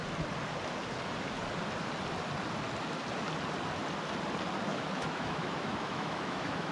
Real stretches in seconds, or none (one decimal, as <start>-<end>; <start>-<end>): 0.0-4.7